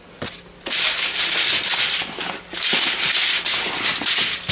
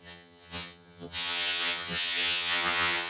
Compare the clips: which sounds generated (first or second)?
second